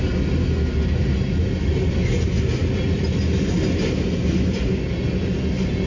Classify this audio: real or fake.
real